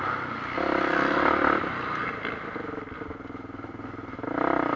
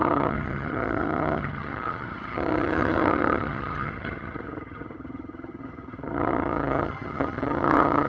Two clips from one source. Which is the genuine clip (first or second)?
first